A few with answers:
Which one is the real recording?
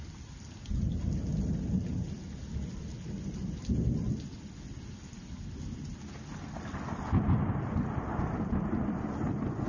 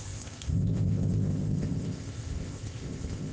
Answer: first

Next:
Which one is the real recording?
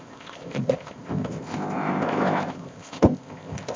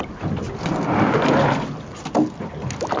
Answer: second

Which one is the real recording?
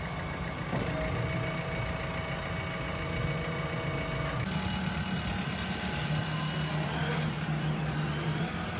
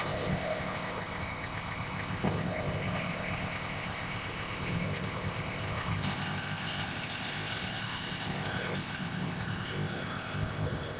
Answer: first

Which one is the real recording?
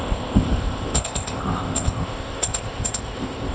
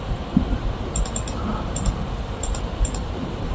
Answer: second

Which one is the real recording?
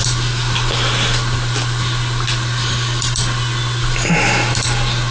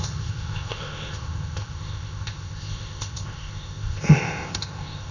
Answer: first